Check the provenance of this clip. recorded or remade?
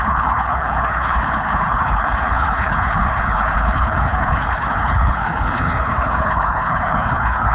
remade